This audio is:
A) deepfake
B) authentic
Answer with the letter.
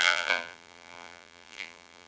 A